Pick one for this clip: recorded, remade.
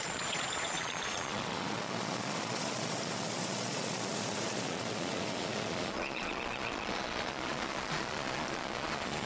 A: remade